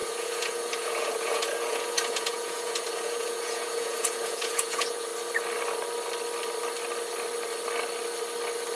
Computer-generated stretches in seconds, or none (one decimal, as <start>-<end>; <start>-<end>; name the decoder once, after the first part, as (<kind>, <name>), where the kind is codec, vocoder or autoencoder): 0.0-5.1 (vocoder, Vocos)